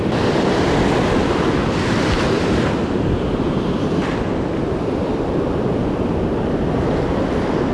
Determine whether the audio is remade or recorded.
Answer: recorded